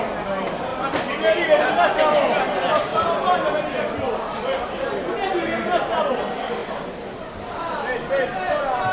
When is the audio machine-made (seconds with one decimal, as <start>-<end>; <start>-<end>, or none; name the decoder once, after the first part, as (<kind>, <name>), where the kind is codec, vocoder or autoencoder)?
none

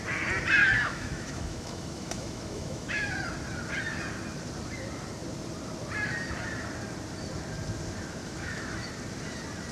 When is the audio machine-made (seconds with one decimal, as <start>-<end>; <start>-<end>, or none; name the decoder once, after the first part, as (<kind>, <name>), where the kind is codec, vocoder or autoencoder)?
0.6-3.1 (autoencoder, DAC-VAE); 8.2-8.9

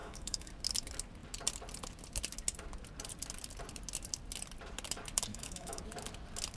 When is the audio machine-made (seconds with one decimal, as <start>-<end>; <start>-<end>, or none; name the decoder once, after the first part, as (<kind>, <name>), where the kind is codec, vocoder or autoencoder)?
0.0-0.5 (autoencoder, DAC-VAE); 5.3-5.8

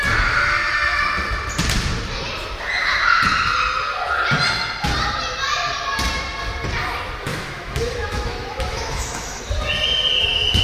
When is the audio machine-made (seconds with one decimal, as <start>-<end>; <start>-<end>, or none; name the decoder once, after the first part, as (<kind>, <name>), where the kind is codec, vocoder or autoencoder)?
7.3-9.4 (autoencoder, DAC-VAE)

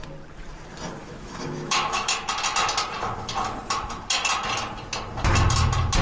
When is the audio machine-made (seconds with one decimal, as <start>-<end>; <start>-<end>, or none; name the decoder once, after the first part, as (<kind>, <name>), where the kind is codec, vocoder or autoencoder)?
1.0-2.1 (autoencoder, DAC-VAE)

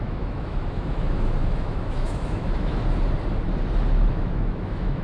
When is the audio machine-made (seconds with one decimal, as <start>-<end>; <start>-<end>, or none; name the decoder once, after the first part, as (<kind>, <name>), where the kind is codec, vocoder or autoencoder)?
0.0-2.8 (autoencoder, DAC-VAE); 4.1-5.0

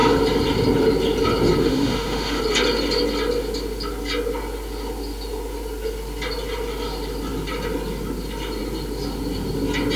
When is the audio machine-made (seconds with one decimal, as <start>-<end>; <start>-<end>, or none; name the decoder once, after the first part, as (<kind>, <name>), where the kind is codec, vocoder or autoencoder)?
1.6-2.4 (autoencoder, DAC-VAE)

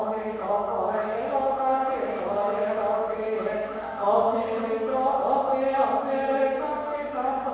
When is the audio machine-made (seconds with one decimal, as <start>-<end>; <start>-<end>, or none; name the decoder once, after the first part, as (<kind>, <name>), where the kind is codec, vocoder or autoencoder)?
0.0-4.9 (autoencoder, DAC-VAE); 6.0-7.5